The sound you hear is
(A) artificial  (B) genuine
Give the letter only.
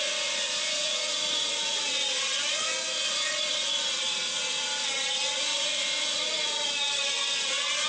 A